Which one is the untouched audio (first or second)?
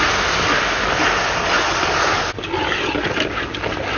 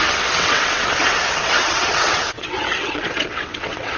first